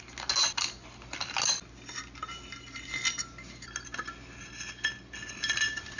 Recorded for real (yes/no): yes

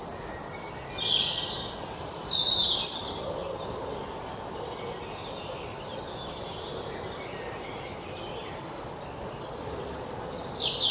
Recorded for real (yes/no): yes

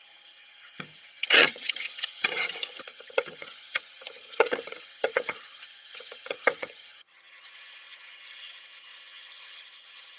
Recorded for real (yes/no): no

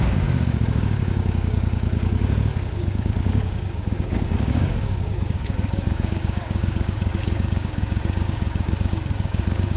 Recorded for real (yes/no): no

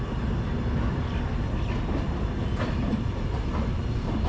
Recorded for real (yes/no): yes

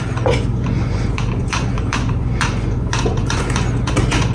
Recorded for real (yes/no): no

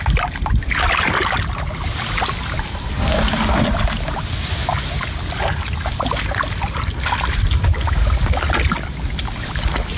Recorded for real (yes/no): yes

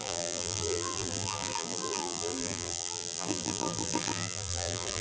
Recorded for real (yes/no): no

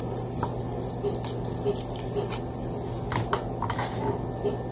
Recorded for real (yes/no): yes